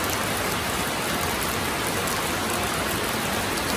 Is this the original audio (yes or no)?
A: yes